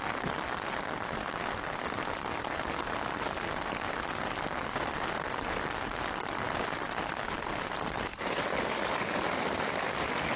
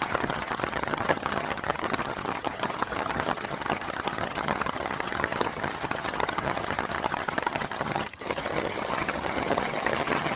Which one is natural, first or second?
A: first